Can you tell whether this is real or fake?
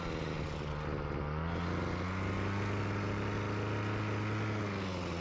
real